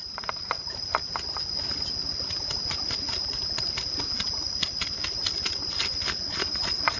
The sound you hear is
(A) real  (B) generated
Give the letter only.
A